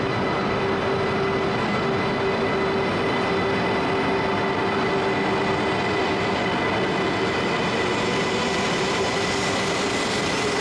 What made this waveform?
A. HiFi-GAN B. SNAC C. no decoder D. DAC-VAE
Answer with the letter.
C